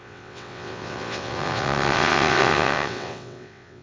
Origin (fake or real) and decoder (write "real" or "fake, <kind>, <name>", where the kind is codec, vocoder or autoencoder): fake, vocoder, WaveNeXt